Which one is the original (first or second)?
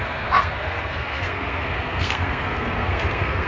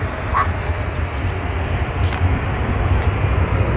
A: second